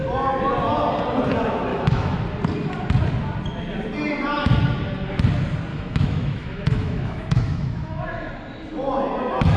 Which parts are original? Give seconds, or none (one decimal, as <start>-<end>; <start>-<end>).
0.0-1.7; 2.2-5.7; 8.3-9.6